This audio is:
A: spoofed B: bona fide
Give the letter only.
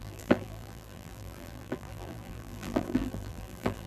A